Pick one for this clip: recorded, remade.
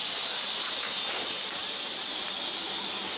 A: recorded